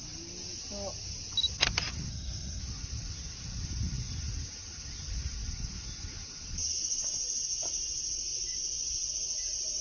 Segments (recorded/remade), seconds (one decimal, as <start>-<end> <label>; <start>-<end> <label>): 0.0-2.1 recorded; 2.1-2.6 remade; 2.6-9.8 recorded